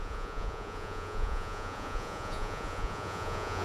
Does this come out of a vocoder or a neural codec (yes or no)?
yes